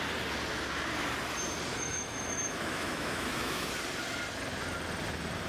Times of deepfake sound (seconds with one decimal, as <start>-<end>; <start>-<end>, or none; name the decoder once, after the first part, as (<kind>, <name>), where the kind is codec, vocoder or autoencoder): 1.7-3.7 (autoencoder, DAC-VAE)